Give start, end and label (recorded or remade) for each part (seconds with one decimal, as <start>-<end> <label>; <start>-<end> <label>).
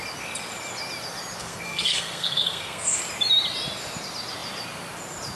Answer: 0.0-1.4 recorded; 1.4-3.0 remade; 3.0-5.4 recorded